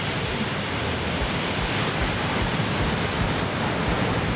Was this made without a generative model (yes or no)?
yes